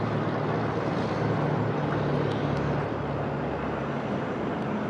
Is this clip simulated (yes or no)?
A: no